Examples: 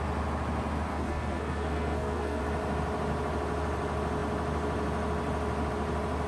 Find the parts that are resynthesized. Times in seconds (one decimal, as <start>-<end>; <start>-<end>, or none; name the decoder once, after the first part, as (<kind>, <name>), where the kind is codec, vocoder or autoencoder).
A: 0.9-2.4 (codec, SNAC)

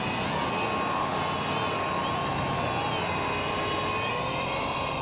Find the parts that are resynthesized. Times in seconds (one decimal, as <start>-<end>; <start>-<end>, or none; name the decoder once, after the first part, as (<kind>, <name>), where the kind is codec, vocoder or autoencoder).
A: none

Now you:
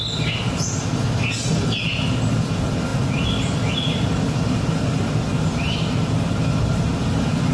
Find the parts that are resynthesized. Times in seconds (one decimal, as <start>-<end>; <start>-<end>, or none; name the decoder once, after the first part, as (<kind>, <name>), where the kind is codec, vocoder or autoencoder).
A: none

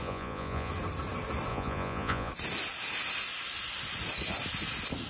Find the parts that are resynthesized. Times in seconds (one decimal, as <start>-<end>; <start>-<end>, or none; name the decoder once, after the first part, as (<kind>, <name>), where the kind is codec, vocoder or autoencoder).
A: 0.0-0.7 (vocoder, Vocos); 1.5-2.3